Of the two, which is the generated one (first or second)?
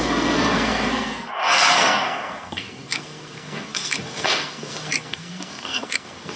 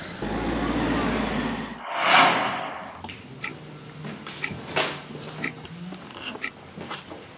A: first